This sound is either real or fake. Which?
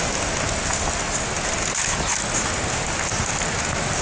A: real